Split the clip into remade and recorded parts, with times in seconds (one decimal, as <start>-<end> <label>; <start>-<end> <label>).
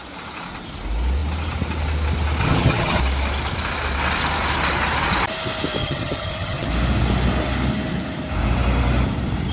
0.0-2.4 recorded; 2.4-3.0 remade; 3.0-5.8 recorded; 5.8-6.7 remade; 6.7-9.5 recorded